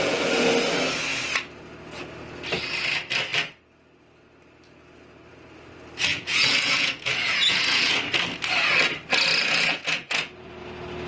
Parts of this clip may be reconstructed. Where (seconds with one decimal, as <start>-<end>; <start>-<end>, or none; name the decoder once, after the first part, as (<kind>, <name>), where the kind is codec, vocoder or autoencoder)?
6.1-7.9 (vocoder, Vocos); 9.4-10.5